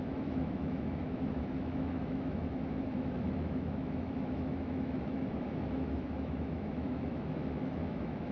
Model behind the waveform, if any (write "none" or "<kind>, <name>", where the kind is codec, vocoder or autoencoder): autoencoder, DAC-VAE